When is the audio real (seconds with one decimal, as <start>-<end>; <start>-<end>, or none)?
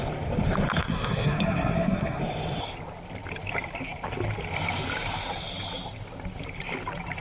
0.0-0.8; 2.2-7.2